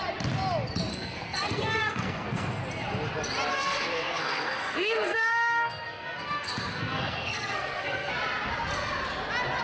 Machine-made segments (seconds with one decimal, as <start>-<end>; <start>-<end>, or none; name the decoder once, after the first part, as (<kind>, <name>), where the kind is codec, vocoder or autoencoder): 0.9-2.6 (codec, SNAC); 3.5-8.1